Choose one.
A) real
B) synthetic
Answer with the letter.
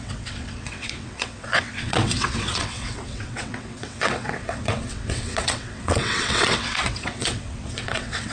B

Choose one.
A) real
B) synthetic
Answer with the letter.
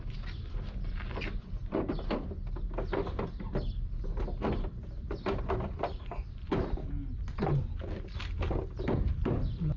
A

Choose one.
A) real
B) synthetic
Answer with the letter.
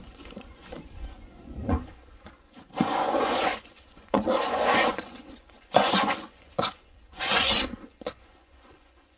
B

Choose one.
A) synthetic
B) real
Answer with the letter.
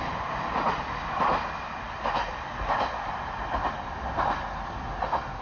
B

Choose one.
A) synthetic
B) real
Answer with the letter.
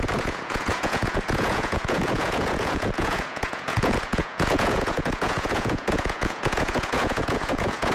A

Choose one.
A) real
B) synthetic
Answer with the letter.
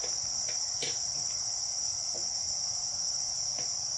A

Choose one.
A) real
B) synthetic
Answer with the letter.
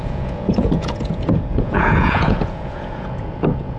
B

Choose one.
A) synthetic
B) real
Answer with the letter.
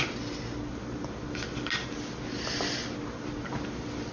B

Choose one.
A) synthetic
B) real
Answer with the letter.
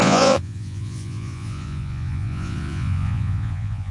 A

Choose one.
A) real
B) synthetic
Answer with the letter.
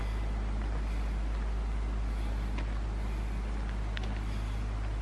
A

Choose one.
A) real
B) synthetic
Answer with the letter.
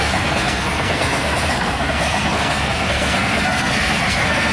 B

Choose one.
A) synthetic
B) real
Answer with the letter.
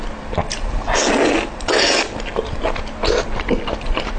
B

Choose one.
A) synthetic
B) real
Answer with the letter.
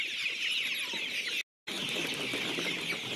B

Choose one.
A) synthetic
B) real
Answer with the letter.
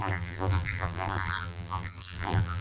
A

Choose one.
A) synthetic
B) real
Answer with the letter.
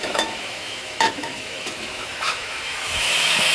A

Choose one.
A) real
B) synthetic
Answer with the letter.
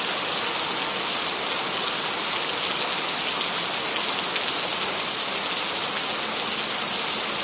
A